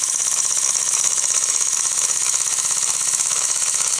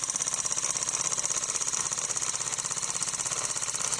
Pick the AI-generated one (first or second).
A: first